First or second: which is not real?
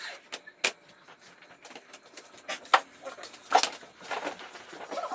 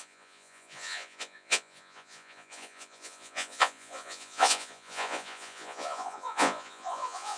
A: second